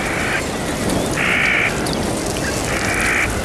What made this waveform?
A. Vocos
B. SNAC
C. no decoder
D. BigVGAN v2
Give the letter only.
C